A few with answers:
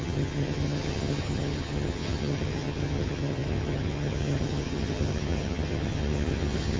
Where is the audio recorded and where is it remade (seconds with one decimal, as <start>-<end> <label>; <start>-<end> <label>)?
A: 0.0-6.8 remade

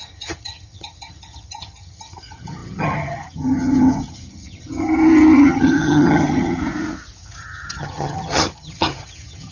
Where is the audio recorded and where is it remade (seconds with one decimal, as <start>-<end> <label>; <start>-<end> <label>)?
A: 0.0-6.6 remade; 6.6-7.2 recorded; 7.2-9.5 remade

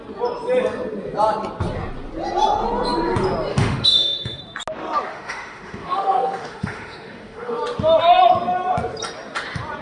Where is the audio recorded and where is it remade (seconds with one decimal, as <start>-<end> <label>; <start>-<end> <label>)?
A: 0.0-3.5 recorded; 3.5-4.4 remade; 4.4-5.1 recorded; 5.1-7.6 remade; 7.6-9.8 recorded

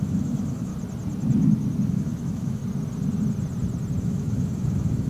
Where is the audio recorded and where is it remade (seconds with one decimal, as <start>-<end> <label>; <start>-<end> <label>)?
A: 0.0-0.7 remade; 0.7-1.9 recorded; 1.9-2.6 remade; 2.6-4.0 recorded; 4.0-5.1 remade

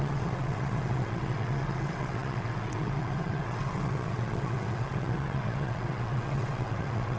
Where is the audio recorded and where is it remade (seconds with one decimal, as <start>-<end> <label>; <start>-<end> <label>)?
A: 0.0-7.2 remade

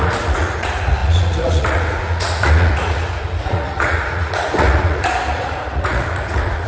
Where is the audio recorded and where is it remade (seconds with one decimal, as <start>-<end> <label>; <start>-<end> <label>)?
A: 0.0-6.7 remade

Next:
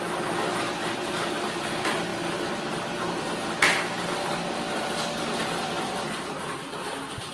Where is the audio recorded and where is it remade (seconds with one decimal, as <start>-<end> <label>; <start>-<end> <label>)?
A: 0.0-7.3 recorded